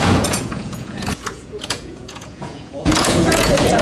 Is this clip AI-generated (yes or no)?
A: yes